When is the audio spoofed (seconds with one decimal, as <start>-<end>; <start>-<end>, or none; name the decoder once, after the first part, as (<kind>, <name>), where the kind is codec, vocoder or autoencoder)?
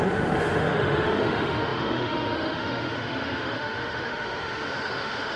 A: 0.0-5.4 (autoencoder, DAC-VAE)